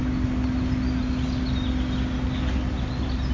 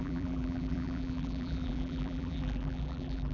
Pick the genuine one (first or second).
first